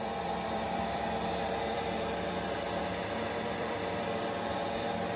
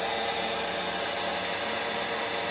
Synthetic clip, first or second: first